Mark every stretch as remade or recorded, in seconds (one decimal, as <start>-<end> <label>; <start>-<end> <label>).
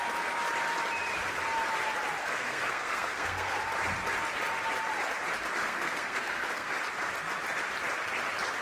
0.0-2.2 recorded; 2.2-3.6 remade; 3.6-5.6 recorded; 5.6-6.7 remade; 6.7-8.6 recorded